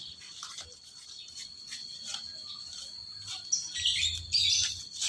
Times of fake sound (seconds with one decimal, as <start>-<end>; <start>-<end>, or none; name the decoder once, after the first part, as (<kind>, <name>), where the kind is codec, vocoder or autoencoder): none